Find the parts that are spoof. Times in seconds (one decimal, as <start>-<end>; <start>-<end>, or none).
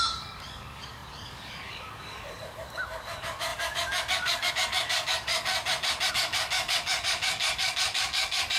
0.0-5.5; 6.1-8.6